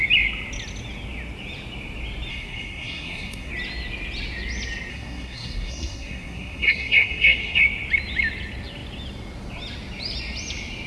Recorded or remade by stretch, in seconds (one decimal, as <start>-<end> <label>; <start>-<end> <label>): 0.0-2.3 recorded; 2.3-3.5 remade; 3.5-4.9 recorded; 4.9-7.6 remade; 7.6-10.9 recorded